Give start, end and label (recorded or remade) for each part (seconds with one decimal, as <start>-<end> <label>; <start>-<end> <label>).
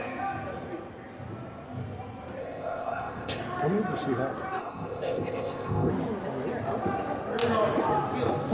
0.0-2.4 recorded; 2.4-3.4 remade; 3.4-4.6 recorded; 4.6-5.9 remade; 5.9-8.5 recorded